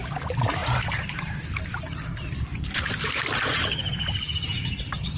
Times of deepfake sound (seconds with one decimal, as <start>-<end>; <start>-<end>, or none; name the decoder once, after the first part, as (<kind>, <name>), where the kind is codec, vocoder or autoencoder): 0.6-1.5 (vocoder, BigVGAN v2); 2.5-3.6

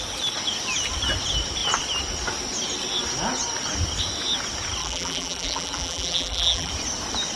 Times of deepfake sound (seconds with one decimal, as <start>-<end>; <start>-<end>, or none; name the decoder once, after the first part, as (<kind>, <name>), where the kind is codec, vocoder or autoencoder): 4.8-6.7 (vocoder, BigVGAN v2)

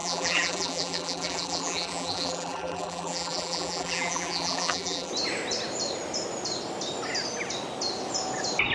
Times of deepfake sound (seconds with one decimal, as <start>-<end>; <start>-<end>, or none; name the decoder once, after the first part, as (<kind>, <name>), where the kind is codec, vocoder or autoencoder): 0.0-5.1 (vocoder, BigVGAN v2)

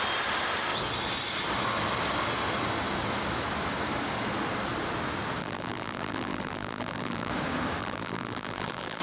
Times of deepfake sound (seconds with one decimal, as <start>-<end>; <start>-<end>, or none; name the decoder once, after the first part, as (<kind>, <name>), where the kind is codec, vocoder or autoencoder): 5.4-7.3 (vocoder, BigVGAN v2); 7.8-9.0

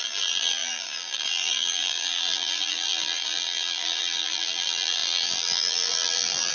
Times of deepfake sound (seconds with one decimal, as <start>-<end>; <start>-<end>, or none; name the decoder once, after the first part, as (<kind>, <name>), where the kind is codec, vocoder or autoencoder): 0.0-6.5 (vocoder, BigVGAN v2)

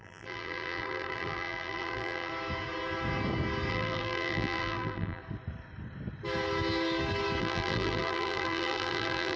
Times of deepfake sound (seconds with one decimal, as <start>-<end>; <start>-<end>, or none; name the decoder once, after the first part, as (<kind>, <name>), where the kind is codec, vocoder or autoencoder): 0.0-2.3 (vocoder, BigVGAN v2); 3.7-5.2; 7.4-9.4

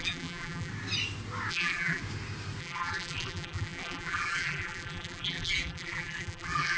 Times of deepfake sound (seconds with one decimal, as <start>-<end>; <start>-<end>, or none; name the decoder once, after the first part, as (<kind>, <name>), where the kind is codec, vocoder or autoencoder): 0.0-0.7 (vocoder, BigVGAN v2); 1.5-2.0; 2.6-6.8

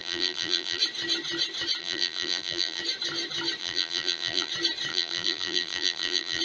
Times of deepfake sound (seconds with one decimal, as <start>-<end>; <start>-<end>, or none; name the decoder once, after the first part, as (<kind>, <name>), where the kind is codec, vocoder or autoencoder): 0.0-0.8 (vocoder, BigVGAN v2); 1.8-2.8; 3.6-4.5; 4.9-6.4